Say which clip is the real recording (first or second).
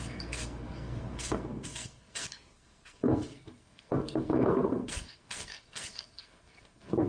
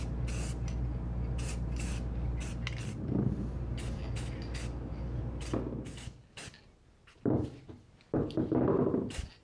second